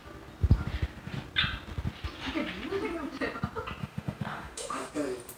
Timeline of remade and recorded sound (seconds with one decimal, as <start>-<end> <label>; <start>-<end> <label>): 0.0-3.8 recorded; 3.8-4.9 remade; 4.9-5.4 recorded